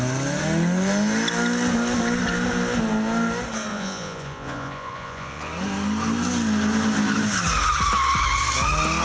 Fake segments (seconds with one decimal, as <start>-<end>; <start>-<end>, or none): 3.7-5.5